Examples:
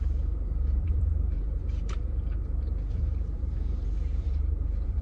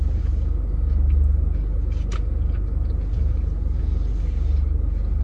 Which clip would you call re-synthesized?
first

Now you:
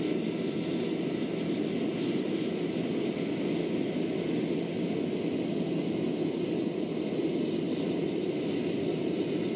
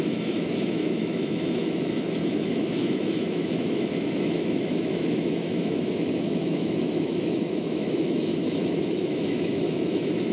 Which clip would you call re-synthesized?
second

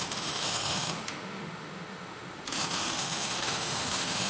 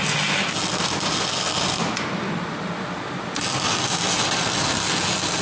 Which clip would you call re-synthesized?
first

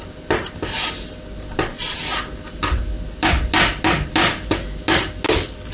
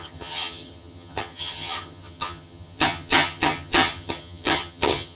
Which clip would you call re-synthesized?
second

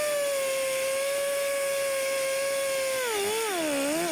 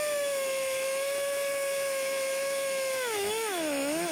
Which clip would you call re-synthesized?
second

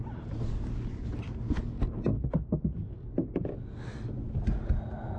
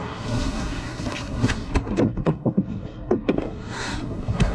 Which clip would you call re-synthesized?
second